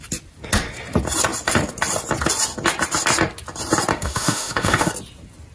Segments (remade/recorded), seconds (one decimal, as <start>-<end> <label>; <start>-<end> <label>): 0.0-3.9 recorded; 3.9-4.9 remade; 4.9-5.5 recorded